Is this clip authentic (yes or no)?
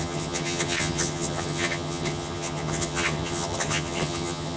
no